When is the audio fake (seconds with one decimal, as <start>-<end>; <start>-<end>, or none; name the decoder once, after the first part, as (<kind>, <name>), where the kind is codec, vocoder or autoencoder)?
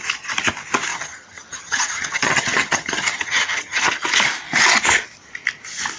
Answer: 0.9-3.9 (vocoder, HiFi-GAN)